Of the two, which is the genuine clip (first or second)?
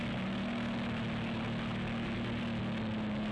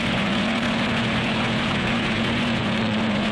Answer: first